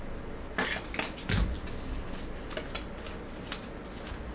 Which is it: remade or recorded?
recorded